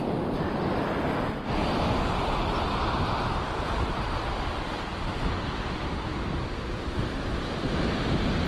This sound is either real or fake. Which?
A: real